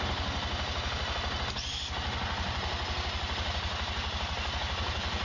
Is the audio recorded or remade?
recorded